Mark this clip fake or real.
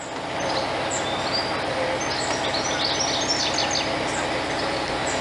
real